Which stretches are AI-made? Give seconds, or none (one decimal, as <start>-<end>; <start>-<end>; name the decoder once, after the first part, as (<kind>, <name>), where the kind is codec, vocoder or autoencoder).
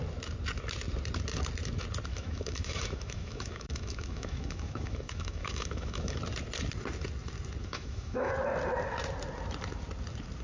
2.1-6.2 (autoencoder, DAC-VAE); 7.6-8.3